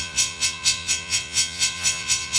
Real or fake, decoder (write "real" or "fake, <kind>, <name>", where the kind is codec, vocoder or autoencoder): fake, vocoder, Vocos